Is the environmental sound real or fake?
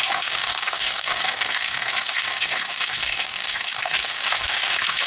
fake